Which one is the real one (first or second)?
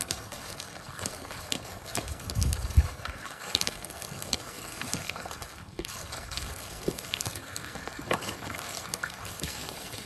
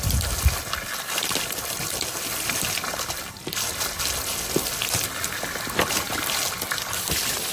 second